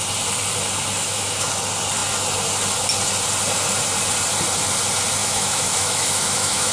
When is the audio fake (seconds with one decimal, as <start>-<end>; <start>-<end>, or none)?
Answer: 1.0-1.5; 5.2-6.7